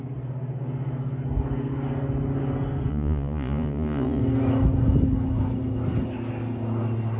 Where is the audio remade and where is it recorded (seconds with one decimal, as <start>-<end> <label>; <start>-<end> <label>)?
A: 0.0-2.9 recorded; 2.9-4.2 remade; 4.2-7.2 recorded